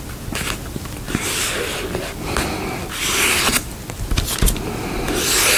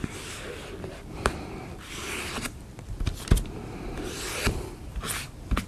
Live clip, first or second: first